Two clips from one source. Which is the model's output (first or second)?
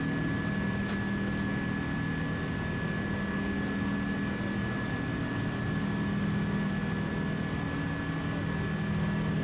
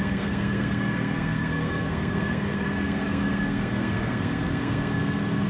second